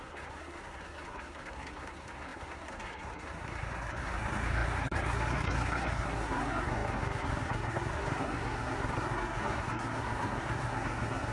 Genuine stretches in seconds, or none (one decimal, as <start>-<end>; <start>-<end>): none